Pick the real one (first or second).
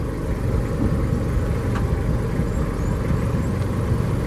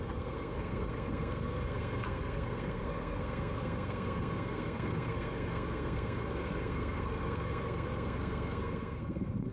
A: first